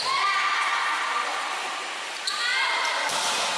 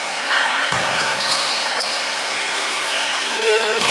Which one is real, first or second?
first